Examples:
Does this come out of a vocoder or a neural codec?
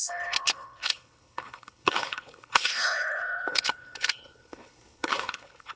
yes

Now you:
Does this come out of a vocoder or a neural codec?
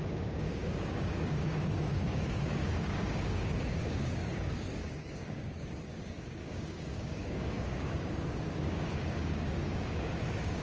yes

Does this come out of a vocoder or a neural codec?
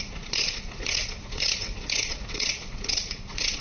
yes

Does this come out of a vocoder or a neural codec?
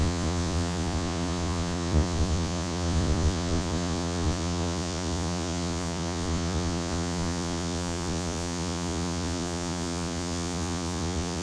yes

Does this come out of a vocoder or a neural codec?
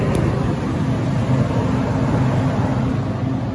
no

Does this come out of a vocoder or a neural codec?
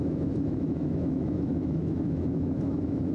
yes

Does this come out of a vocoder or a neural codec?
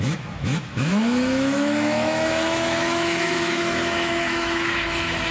yes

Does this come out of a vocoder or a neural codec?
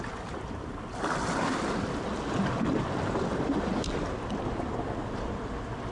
no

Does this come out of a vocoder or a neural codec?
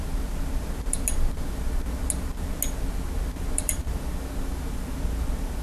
no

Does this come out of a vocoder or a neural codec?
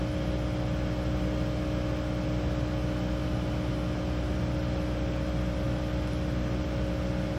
no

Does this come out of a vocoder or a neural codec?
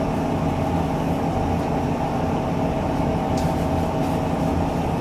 no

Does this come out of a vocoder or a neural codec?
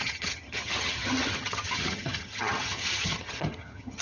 yes